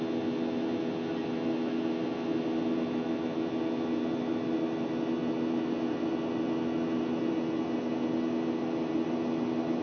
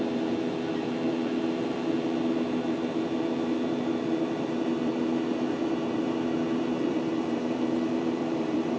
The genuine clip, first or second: first